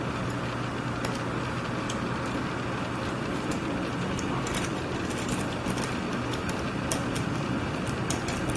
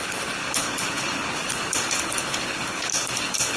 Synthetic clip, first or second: second